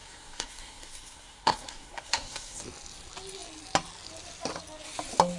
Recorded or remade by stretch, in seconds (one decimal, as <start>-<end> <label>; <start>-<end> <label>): 0.0-2.6 remade; 2.6-5.4 recorded